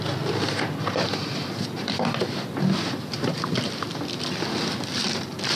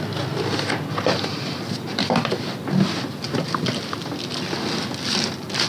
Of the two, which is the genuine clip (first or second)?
second